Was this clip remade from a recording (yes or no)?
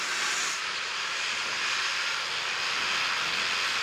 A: no